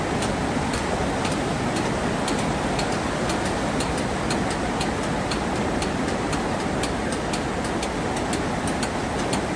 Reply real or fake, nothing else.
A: real